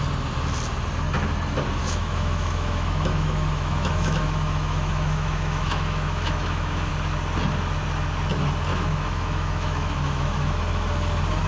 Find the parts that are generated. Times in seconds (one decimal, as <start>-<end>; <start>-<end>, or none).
1.8-6.9; 8.7-10.6